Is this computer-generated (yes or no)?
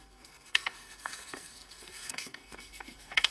yes